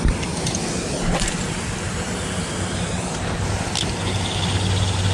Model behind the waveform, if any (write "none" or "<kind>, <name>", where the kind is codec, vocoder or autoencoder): none